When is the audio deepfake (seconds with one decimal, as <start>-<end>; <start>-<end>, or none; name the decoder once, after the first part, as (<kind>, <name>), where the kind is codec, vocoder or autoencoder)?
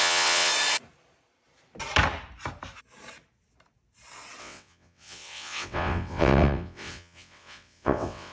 0.0-0.5 (vocoder, WaveNeXt); 4.4-8.3